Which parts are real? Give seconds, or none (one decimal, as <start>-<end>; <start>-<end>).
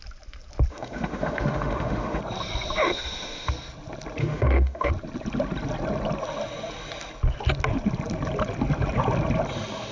0.0-0.7; 2.2-2.8; 3.5-4.2; 4.9-9.9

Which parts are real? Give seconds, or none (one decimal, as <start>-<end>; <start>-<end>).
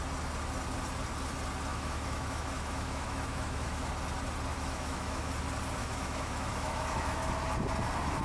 0.0-1.7; 3.9-4.5; 5.3-5.8; 7.3-8.2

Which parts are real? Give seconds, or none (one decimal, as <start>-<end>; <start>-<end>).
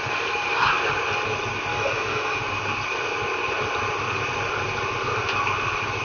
0.0-1.7; 2.4-6.0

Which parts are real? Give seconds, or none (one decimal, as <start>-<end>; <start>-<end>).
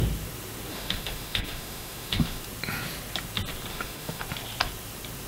0.0-0.7; 2.4-3.7; 4.2-5.3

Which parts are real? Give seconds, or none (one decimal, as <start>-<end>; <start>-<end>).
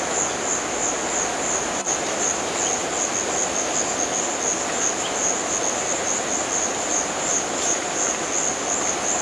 0.0-9.2